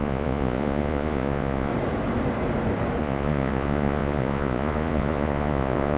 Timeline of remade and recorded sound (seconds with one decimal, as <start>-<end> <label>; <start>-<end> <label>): 0.0-1.7 remade; 1.7-3.0 recorded; 3.0-6.0 remade